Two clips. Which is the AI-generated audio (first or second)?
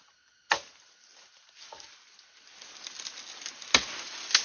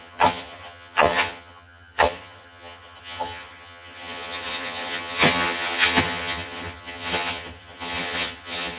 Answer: second